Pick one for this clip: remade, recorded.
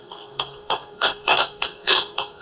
remade